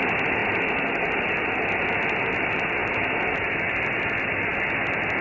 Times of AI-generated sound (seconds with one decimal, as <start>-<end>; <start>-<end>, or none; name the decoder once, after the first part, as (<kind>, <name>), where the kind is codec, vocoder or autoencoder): none